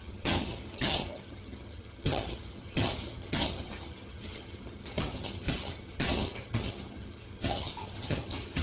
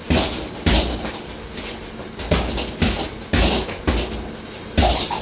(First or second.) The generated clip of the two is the first